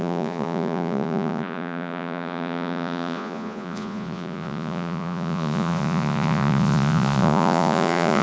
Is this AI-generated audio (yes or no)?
yes